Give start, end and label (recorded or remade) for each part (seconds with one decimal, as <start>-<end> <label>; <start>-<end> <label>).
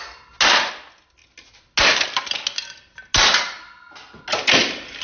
0.0-5.0 recorded